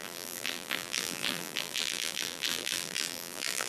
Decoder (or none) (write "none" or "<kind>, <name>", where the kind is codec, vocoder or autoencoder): vocoder, BigVGAN v2